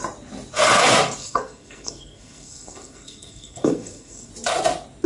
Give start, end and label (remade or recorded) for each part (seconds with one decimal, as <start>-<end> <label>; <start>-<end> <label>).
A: 0.0-1.2 recorded; 1.2-4.3 remade; 4.3-5.1 recorded